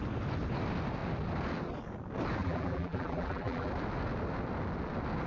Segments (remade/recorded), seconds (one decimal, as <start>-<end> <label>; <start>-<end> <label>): 0.0-2.4 recorded; 2.4-3.7 remade; 3.7-5.3 recorded